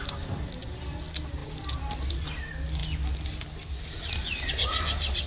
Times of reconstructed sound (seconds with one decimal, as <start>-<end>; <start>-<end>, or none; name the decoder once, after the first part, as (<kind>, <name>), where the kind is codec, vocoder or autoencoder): none